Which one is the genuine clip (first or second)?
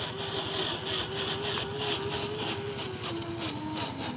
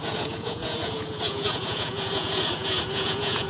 first